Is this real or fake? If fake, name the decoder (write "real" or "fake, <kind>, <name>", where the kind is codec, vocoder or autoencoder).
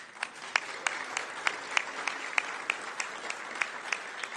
real